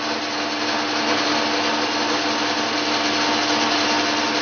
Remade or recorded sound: recorded